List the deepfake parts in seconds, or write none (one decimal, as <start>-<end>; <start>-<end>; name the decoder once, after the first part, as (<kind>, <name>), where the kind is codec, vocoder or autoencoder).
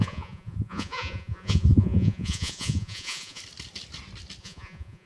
0.0-3.4 (vocoder, Vocos); 4.4-5.1